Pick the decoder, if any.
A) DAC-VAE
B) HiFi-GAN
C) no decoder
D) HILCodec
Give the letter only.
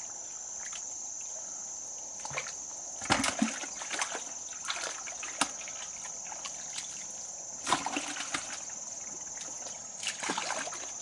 C